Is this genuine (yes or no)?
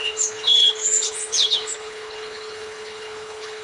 no